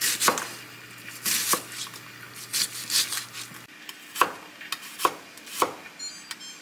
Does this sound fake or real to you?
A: real